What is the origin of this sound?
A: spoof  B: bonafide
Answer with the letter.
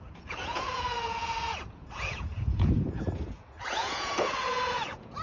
A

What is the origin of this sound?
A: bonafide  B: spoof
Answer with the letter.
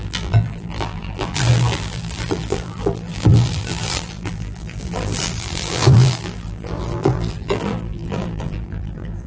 B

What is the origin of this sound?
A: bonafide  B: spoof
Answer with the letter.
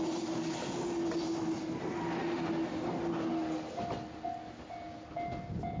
A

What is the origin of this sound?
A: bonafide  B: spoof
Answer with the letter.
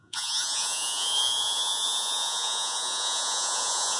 B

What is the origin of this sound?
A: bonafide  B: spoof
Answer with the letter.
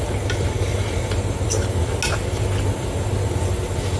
A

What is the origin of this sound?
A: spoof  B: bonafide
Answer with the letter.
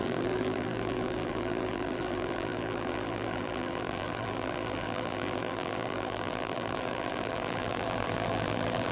A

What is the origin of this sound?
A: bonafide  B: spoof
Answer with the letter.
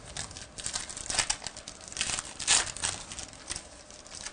A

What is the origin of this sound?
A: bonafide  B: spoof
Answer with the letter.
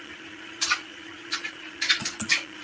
B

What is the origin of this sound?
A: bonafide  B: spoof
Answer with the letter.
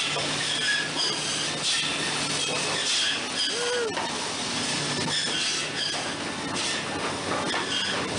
A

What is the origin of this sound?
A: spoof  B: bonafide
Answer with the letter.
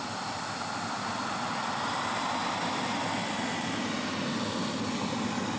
B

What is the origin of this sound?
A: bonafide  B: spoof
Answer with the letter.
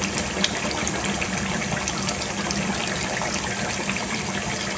A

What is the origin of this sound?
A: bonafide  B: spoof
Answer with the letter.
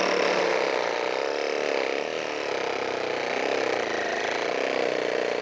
A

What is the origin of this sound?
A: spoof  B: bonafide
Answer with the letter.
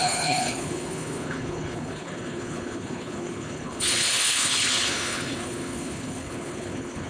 A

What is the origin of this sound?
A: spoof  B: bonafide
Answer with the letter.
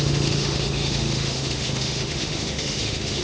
A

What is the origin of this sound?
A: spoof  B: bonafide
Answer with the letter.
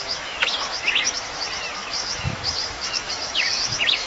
A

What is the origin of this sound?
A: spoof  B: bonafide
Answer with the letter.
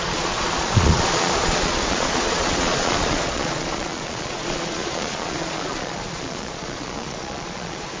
A